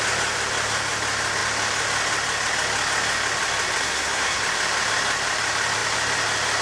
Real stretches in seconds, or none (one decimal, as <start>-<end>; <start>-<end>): 0.0-3.8; 4.4-6.6